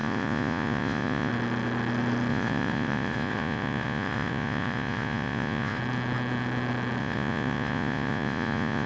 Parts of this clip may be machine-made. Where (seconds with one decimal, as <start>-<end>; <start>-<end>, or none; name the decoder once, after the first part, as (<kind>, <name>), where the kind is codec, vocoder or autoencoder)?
0.0-1.3 (vocoder, Vocos); 2.3-5.8; 7.0-8.9